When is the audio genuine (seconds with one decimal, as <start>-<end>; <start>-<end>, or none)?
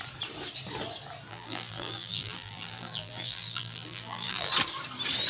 0.0-1.3; 4.5-5.3